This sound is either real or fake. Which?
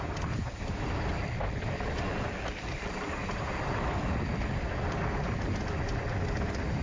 real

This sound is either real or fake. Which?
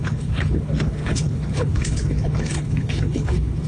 fake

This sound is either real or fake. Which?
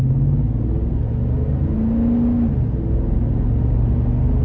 real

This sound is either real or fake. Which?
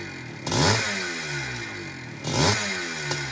real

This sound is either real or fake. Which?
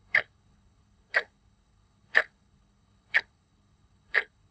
fake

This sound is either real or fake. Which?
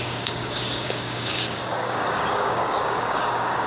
fake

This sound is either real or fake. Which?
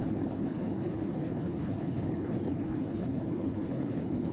fake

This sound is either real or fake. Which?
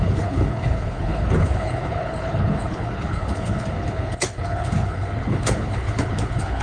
fake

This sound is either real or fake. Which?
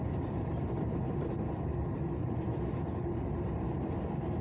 fake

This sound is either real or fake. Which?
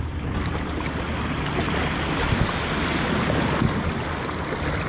real